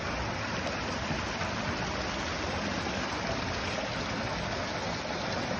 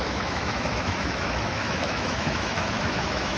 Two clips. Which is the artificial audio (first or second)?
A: second